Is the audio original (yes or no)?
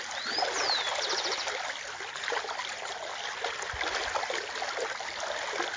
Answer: yes